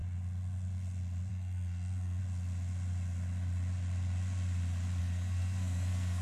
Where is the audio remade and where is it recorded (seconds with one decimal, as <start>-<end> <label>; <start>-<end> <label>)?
0.0-1.3 recorded; 1.3-2.2 remade; 2.2-5.0 recorded; 5.0-6.2 remade